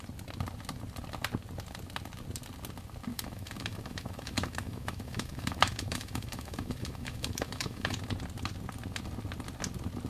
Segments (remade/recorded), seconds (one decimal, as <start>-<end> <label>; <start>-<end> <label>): 0.0-3.1 recorded; 3.1-8.0 remade; 8.0-10.1 recorded